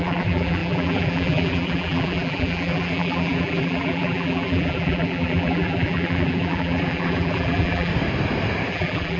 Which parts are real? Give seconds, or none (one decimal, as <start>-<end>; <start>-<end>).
7.9-8.7